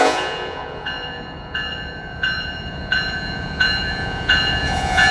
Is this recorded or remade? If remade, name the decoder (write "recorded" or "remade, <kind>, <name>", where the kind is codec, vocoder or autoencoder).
remade, vocoder, Vocos